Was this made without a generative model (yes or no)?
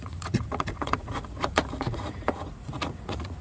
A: no